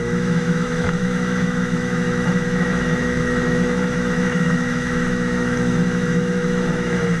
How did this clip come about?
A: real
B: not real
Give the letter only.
B